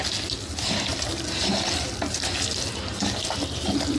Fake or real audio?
real